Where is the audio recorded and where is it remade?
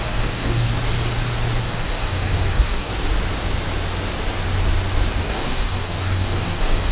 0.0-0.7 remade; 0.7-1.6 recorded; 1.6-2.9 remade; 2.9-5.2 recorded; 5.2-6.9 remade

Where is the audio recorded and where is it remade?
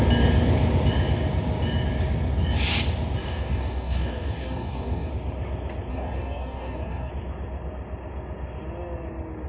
0.0-3.2 recorded; 3.2-5.1 remade; 5.1-5.9 recorded; 5.9-7.1 remade; 7.1-9.5 recorded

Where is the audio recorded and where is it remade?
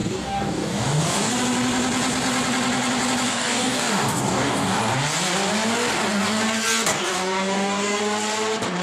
0.0-1.3 remade; 1.3-3.3 recorded; 3.3-4.8 remade; 4.8-6.9 recorded; 6.9-8.0 remade; 8.0-8.8 recorded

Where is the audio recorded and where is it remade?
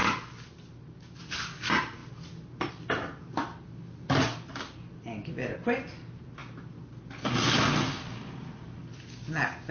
0.0-9.7 recorded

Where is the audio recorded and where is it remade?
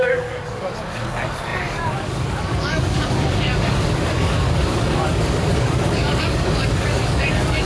0.0-7.7 remade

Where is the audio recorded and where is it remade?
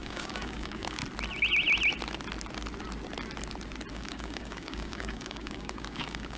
0.0-1.0 remade; 1.0-3.9 recorded; 3.9-6.4 remade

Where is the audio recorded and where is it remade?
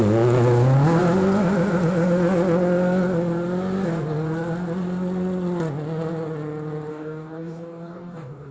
0.0-6.9 recorded; 6.9-8.5 remade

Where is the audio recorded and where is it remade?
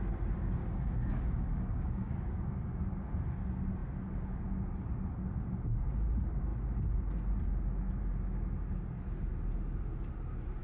0.0-0.6 recorded; 0.6-2.8 remade; 2.8-10.6 recorded